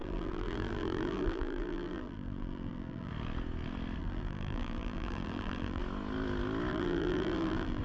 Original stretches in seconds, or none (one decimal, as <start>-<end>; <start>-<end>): 3.1-4.0; 5.8-6.7